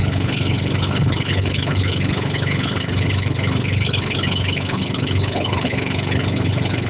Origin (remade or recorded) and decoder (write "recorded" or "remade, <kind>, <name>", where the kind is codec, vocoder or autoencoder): remade, codec, HILCodec